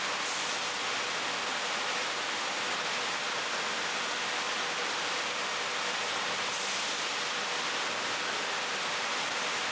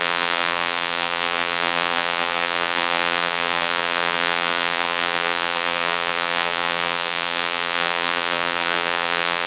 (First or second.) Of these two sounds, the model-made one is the second